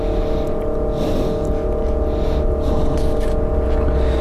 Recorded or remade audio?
recorded